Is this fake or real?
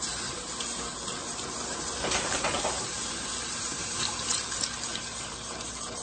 fake